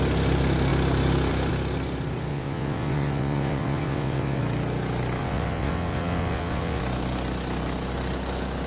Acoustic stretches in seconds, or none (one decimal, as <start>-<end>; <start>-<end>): 0.0-2.3; 4.4-5.2; 6.8-8.7